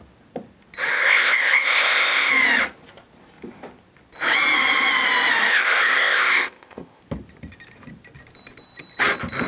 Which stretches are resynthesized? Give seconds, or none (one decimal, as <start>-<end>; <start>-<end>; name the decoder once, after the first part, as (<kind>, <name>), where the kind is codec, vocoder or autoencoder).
0.9-2.3 (codec, ZipCodec); 5.5-7.0